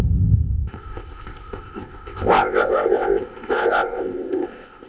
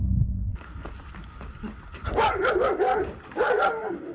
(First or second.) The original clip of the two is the second